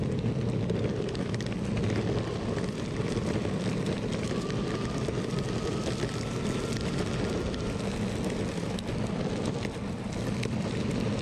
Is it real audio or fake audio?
real